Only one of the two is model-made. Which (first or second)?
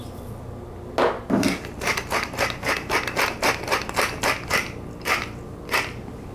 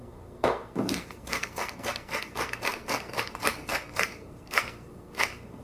second